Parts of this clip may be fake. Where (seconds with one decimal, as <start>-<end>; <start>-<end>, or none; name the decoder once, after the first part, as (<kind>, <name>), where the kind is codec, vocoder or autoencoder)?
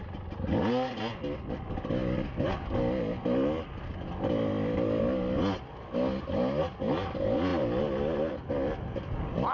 none